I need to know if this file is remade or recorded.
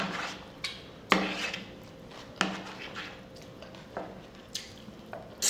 recorded